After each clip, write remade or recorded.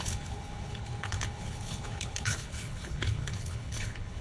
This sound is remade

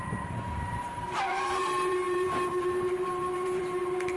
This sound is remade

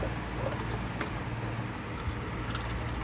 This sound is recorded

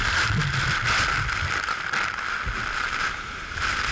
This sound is recorded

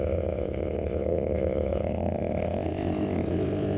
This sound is remade